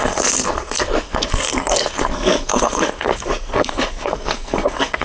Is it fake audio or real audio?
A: fake